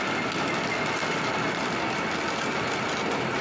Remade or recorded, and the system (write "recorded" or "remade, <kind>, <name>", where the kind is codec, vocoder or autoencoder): recorded